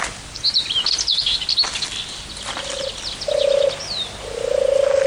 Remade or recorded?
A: recorded